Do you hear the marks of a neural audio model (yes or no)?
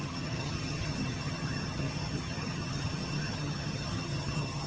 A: yes